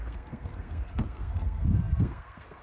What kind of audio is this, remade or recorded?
remade